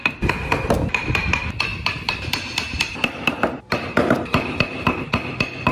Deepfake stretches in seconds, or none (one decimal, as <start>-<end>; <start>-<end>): 1.7-5.1